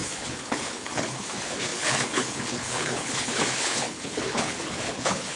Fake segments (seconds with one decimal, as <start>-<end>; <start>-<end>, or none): 0.0-5.4